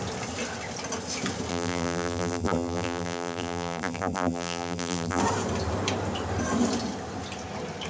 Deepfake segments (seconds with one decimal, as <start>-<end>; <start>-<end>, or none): 1.5-5.2